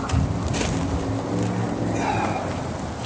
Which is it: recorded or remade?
recorded